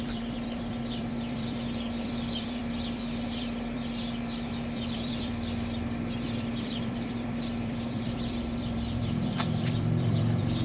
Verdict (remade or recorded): remade